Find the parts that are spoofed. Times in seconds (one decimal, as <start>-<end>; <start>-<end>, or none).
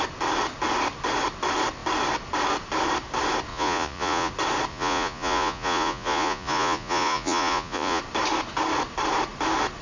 3.5-4.3; 4.7-8.0